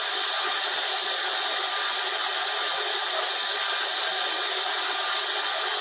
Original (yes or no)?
yes